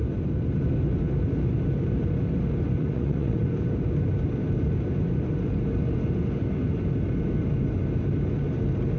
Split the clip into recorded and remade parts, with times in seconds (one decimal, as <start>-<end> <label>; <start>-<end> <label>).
0.0-2.8 recorded; 2.8-3.4 remade; 3.4-9.0 recorded